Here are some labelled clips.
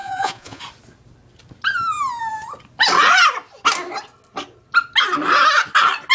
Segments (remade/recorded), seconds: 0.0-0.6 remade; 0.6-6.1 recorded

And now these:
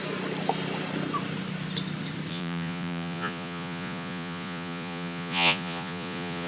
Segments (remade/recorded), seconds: 0.0-2.3 recorded; 2.3-6.5 remade

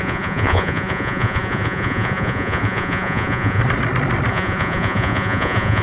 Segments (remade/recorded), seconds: 0.0-3.6 remade; 3.6-4.3 recorded; 4.3-5.8 remade

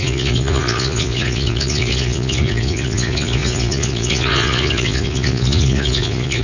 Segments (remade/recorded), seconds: 0.0-6.4 remade

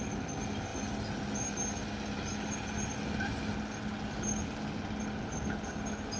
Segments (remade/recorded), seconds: 0.0-6.2 recorded

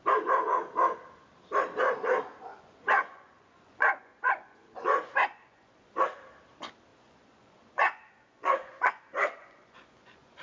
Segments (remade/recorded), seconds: 0.0-2.5 recorded; 2.5-6.0 remade; 6.0-6.9 recorded; 6.9-10.4 remade

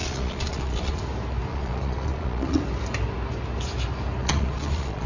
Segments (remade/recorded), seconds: 0.0-1.0 remade; 1.0-1.5 recorded; 1.5-2.6 remade; 2.6-4.2 recorded; 4.2-5.1 remade

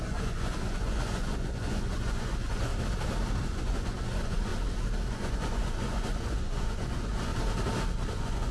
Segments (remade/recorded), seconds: 0.0-2.7 remade; 2.7-3.4 recorded; 3.4-4.5 remade; 4.5-5.1 recorded; 5.1-7.3 remade; 7.3-8.1 recorded; 8.1-8.5 remade